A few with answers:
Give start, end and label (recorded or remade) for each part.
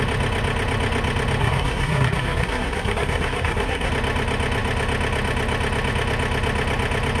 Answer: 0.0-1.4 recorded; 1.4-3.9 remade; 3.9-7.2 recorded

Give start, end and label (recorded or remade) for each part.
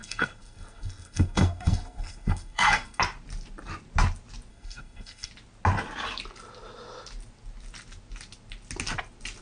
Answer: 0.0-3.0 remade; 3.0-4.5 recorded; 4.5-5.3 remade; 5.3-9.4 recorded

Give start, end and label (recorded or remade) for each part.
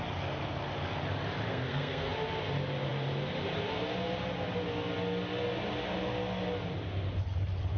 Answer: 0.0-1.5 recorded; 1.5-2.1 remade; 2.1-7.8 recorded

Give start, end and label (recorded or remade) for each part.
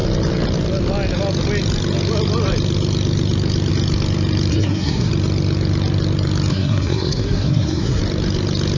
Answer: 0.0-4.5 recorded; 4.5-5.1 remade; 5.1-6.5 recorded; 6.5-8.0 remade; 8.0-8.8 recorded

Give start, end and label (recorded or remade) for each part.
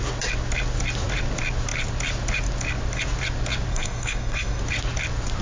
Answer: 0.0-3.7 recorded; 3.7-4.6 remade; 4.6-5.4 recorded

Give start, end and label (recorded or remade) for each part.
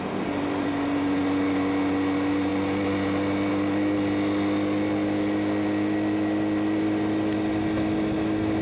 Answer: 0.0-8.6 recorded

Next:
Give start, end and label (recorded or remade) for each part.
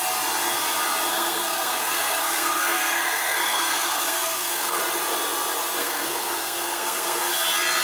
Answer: 0.0-1.1 recorded; 1.1-4.8 remade; 4.8-5.8 recorded; 5.8-7.3 remade; 7.3-7.8 recorded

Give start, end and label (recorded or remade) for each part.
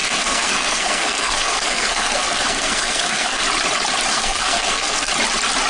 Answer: 0.0-3.4 remade; 3.4-4.1 recorded; 4.1-5.1 remade; 5.1-5.7 recorded